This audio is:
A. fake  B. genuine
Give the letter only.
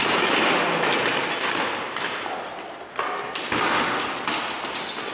B